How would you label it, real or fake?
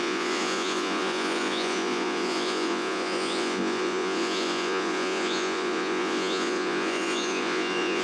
fake